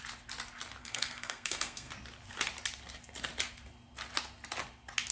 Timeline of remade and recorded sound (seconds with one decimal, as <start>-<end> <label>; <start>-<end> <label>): 0.0-0.8 recorded; 0.8-1.9 remade; 1.9-5.1 recorded